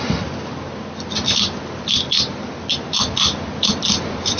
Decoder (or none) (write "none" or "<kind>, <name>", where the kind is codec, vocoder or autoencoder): none